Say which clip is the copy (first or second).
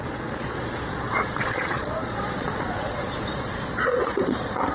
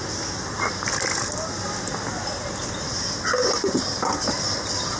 first